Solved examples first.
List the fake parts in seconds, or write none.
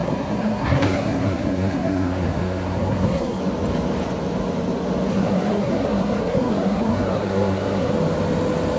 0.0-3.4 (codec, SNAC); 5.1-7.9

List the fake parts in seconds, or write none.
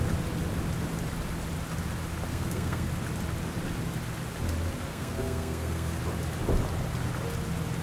2.3-2.9 (codec, SNAC); 4.9-6.0